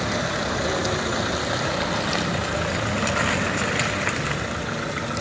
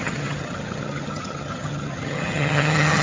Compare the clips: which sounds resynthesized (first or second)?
second